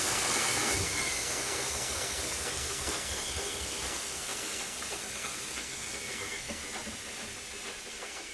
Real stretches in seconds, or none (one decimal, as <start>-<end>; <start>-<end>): 6.6-7.9